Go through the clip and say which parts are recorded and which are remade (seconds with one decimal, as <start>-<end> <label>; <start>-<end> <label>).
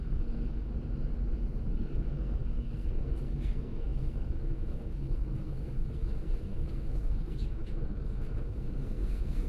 0.0-0.7 remade; 0.7-1.7 recorded; 1.7-9.5 remade